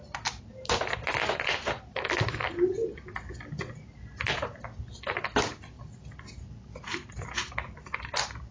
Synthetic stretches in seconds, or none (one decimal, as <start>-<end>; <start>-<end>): 1.9-2.5